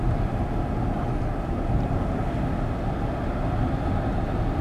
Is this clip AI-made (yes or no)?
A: no